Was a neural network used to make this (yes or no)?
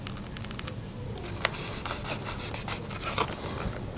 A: no